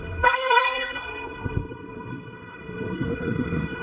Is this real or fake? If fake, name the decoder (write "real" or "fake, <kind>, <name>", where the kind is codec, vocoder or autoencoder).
fake, codec, SNAC